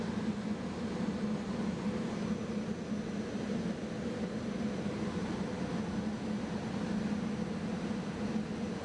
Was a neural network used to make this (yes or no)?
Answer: no